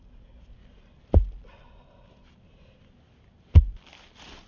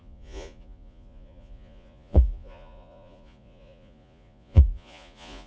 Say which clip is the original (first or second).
first